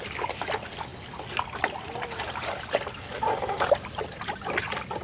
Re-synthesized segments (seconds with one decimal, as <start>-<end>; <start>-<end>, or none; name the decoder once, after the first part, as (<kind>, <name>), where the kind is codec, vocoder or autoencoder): none